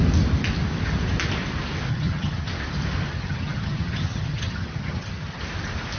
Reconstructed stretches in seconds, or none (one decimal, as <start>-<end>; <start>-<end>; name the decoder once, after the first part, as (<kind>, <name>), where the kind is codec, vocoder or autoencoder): 1.9-2.5 (vocoder, HiFi-GAN); 3.1-5.4